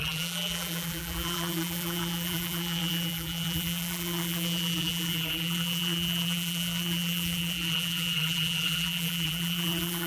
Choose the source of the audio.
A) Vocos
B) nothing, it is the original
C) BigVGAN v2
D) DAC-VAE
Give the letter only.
C